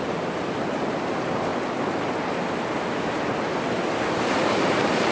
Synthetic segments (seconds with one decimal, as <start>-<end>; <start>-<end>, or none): 0.0-1.5; 4.6-5.1